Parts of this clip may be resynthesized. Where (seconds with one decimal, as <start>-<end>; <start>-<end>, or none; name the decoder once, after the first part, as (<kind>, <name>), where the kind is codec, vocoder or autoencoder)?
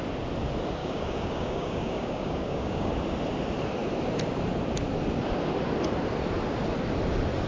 0.8-2.9 (codec, DAC)